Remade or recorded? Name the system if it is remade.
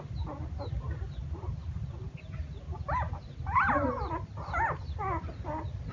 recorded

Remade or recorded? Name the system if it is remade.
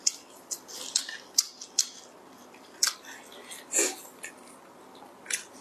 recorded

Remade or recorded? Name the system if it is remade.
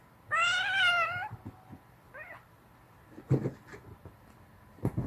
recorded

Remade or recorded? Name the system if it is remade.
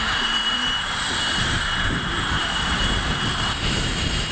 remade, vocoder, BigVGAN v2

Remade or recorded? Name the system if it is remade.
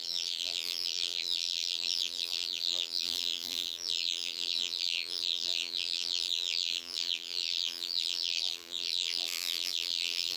remade, vocoder, BigVGAN v2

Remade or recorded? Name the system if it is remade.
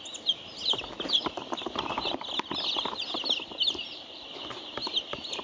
recorded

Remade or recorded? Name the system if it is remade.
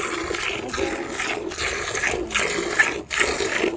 recorded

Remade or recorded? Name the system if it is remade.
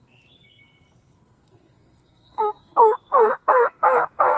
remade, codec, SNAC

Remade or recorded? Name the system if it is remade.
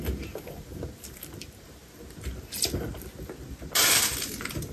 recorded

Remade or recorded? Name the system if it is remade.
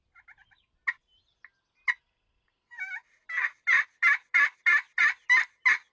recorded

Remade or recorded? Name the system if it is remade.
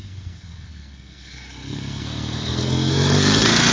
remade, codec, SNAC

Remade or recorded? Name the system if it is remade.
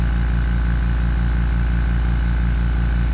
recorded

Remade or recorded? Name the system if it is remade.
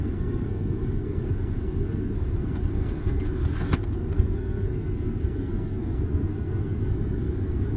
remade, codec, SNAC